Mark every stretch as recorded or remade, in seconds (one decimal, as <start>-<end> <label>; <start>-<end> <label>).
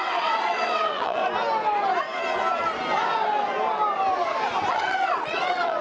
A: 0.0-1.2 remade; 1.2-4.7 recorded; 4.7-5.8 remade